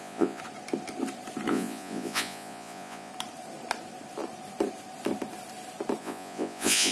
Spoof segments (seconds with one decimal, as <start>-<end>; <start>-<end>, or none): 0.0-0.4; 1.5-3.1; 6.0-6.9